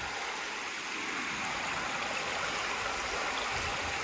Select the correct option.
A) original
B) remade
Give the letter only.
A